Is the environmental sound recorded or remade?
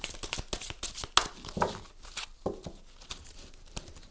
recorded